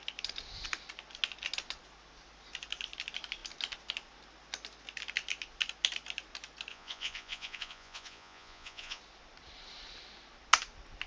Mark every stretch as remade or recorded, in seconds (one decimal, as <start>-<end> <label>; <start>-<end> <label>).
0.0-6.7 recorded; 6.7-9.0 remade; 9.0-11.1 recorded